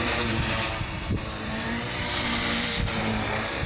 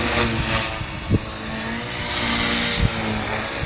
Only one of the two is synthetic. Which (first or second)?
first